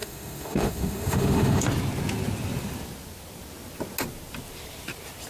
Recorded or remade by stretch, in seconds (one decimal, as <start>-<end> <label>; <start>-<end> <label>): 0.0-1.6 remade; 1.6-5.3 recorded